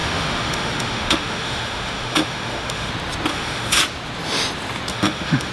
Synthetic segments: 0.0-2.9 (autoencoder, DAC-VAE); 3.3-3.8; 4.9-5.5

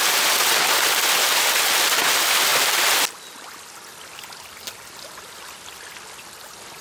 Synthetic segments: none

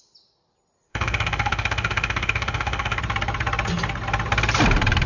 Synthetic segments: 0.9-3.0 (autoencoder, DAC-VAE)

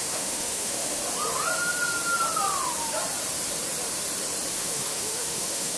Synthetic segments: 0.0-1.0 (autoencoder, DAC-VAE); 4.5-5.8